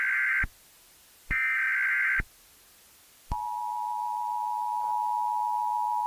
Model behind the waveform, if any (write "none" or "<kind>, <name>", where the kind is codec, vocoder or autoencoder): none